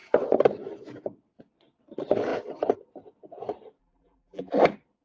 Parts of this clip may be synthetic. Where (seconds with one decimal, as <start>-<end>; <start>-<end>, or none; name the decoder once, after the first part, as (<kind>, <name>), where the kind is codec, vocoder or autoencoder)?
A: 3.8-4.5 (vocoder, BigVGAN v2)